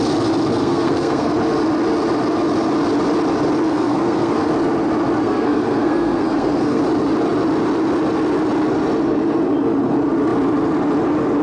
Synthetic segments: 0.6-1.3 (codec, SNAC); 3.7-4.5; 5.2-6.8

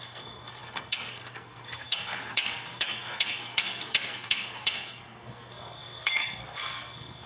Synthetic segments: 0.0-7.3 (codec, SNAC)

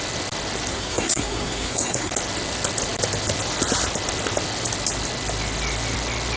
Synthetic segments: 0.7-2.1 (codec, SNAC)

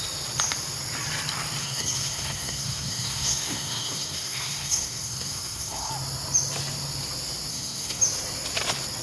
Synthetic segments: 1.6-5.9 (codec, SNAC); 7.5-8.0

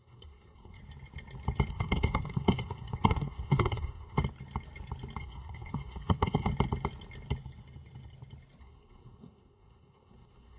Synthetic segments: 0.0-0.8 (codec, SNAC); 1.7-4.2; 5.2-6.5; 8.6-10.6

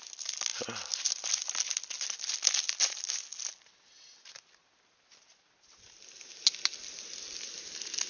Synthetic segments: none

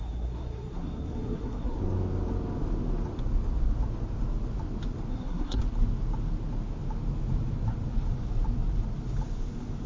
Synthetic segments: 0.0-1.8 (codec, SNAC); 5.1-5.6

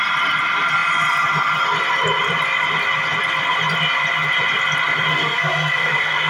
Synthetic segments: 5.1-6.3 (codec, SNAC)